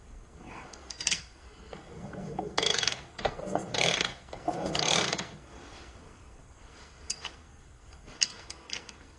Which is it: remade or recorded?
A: remade